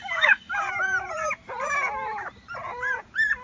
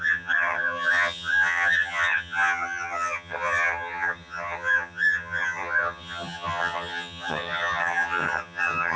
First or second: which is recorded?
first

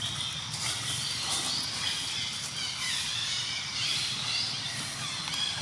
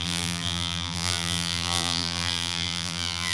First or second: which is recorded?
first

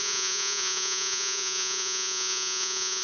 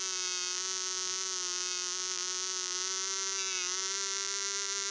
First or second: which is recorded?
second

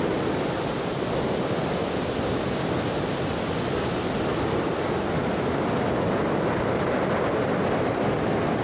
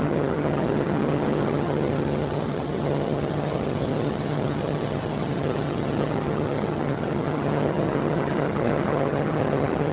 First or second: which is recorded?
first